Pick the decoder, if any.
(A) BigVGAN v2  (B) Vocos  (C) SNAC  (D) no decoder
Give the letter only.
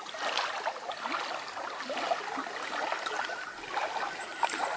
D